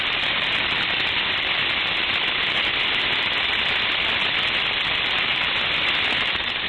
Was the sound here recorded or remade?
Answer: remade